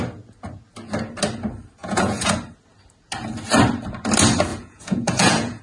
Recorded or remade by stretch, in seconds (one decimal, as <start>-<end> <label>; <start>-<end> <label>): 0.0-1.8 recorded; 1.8-2.3 remade; 2.3-4.5 recorded; 4.5-5.6 remade